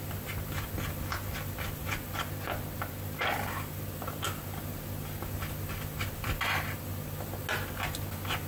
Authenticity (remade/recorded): recorded